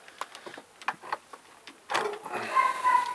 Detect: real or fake real